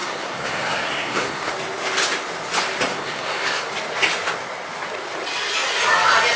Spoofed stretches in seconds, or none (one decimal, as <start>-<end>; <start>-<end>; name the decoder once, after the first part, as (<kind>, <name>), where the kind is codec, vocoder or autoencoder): 0.0-1.5 (codec, SNAC); 2.9-3.7